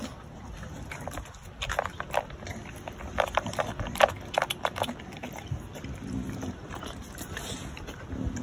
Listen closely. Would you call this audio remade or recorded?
recorded